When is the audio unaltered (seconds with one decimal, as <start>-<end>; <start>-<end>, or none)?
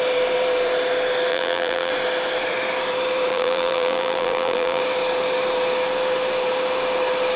0.0-1.3; 1.9-3.3; 4.8-7.4